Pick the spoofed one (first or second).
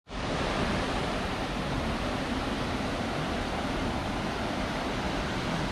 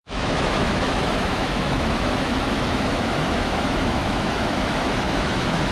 second